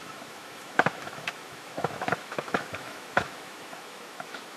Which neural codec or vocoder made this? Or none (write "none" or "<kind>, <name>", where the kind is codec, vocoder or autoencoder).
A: autoencoder, DAC-VAE